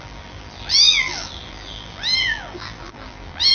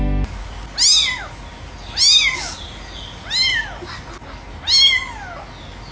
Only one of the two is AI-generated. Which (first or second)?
first